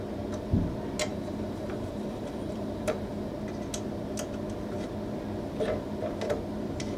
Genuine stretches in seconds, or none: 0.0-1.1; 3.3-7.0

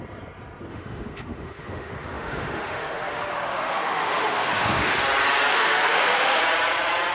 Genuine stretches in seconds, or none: 0.0-0.7; 5.0-5.5; 6.4-7.1

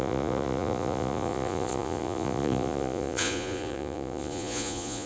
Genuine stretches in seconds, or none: none

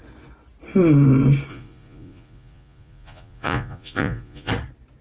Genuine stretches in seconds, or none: 0.0-1.5; 4.5-5.0

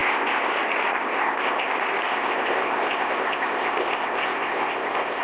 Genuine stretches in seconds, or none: 0.5-0.9; 1.7-2.1

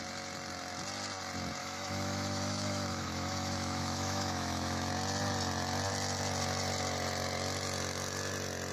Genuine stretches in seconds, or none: 0.0-1.6; 4.9-8.7

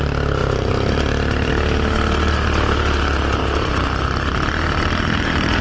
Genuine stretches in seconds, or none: 0.0-5.6